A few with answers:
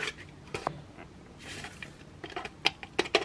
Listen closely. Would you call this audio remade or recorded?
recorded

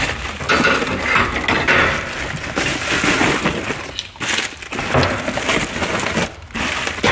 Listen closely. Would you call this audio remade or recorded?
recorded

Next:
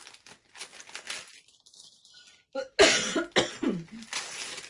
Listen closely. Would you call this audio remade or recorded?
recorded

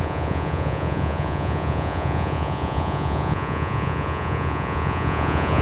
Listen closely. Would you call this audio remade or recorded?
remade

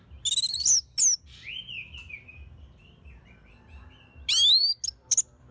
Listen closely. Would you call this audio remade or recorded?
recorded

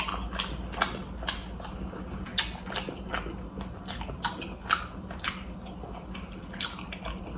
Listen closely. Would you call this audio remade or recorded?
recorded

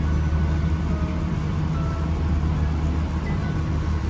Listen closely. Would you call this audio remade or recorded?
recorded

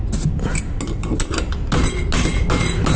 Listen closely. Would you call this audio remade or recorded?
recorded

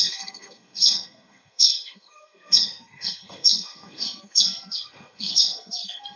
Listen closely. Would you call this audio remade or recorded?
remade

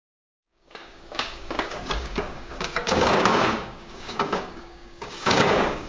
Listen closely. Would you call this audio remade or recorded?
remade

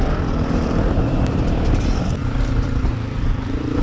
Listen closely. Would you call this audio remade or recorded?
remade